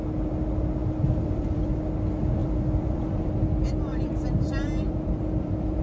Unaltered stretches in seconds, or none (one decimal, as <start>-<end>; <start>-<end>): 0.0-0.8; 1.8-2.4; 3.2-3.9